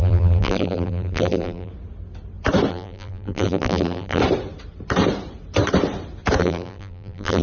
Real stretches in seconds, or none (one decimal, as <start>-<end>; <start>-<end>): 1.7-2.7; 4.2-6.4